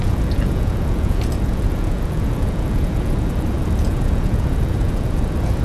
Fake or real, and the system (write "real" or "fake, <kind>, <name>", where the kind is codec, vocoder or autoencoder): fake, vocoder, Vocos